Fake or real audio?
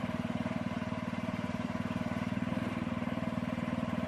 fake